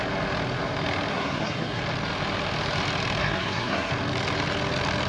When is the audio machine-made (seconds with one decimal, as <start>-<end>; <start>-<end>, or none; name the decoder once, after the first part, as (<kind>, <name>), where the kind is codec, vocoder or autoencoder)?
1.1-1.8 (codec, SNAC); 3.2-3.9